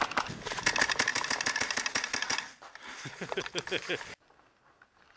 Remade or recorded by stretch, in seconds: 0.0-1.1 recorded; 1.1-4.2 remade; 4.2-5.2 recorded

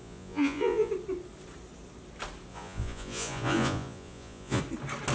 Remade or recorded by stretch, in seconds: 0.0-0.9 remade; 0.9-2.5 recorded; 2.5-4.6 remade; 4.6-5.1 recorded

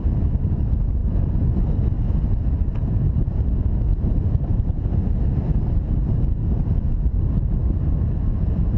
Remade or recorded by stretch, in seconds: 0.0-3.9 recorded; 3.9-4.7 remade; 4.7-8.8 recorded

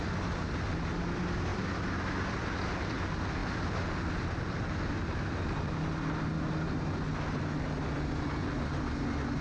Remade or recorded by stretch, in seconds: 0.0-1.5 recorded; 1.5-2.3 remade; 2.3-9.4 recorded

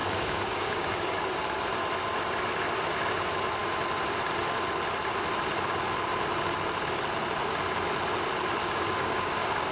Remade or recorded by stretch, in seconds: 0.0-1.3 remade; 1.3-8.6 recorded; 8.6-9.7 remade

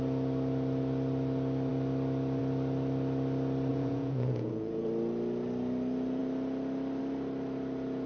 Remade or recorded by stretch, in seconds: 0.0-3.7 recorded; 3.7-4.9 remade; 4.9-8.1 recorded